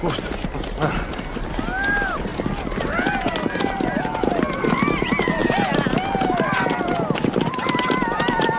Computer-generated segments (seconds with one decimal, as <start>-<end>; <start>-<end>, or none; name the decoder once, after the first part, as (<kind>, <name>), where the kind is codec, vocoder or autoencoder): none